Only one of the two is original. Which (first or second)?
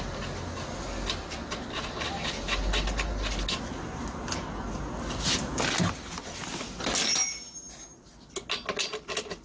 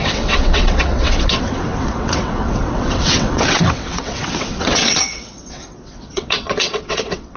first